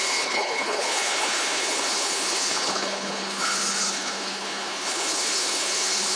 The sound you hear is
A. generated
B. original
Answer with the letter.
A